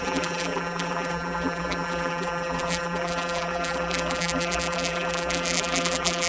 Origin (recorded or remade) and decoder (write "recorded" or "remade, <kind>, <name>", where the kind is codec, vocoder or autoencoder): remade, vocoder, BigVGAN v2